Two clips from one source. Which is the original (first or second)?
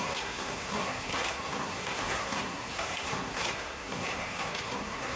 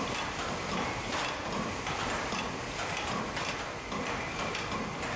second